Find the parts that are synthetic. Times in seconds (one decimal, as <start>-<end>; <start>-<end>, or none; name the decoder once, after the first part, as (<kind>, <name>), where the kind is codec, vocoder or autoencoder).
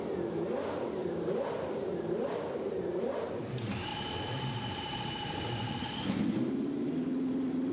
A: 1.0-3.5 (vocoder, BigVGAN v2); 3.9-5.8